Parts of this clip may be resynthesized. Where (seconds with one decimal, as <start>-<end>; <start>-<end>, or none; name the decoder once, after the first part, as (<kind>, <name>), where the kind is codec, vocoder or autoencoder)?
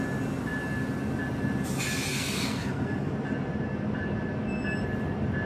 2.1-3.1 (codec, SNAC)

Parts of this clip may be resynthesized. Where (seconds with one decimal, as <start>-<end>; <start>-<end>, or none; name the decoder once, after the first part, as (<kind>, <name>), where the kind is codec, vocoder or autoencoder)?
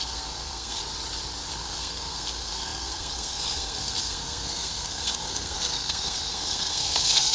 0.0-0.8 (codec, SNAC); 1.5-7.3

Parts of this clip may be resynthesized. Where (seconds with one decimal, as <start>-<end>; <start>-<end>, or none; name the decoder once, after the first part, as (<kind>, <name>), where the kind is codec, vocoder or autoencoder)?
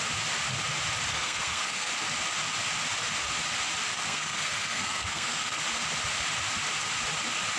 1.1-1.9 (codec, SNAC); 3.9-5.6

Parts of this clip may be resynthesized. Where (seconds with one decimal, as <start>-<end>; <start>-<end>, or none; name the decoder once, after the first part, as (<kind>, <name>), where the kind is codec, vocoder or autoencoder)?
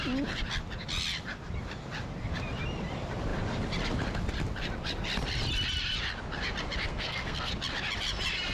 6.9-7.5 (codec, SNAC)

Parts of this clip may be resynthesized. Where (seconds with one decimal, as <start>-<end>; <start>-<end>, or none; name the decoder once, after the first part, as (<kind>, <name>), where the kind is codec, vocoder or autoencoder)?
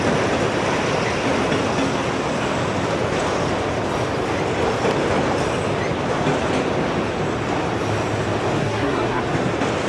8.6-9.2 (codec, SNAC)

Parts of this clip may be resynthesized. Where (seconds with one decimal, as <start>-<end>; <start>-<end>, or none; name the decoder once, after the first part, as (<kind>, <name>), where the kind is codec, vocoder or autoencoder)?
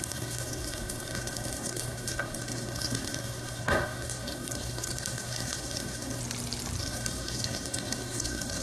0.0-6.2 (codec, SNAC); 6.8-8.6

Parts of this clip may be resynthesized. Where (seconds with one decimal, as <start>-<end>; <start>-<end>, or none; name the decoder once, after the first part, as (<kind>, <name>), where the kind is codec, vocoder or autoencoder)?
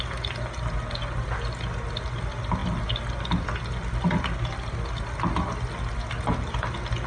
none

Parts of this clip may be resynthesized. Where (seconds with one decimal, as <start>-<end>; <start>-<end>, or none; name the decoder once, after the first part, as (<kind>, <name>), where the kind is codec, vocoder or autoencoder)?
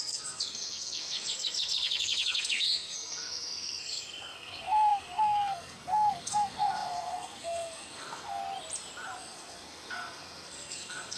0.0-8.4 (codec, SNAC); 9.2-11.2